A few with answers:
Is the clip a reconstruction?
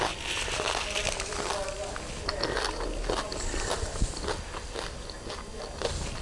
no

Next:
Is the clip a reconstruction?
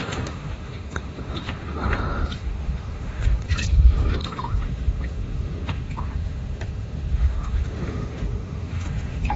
yes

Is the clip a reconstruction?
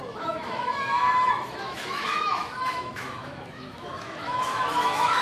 yes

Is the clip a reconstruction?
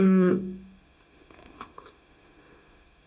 yes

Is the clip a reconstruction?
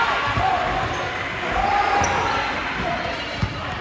no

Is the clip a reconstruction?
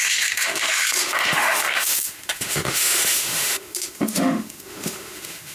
yes